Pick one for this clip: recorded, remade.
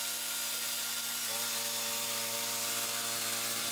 recorded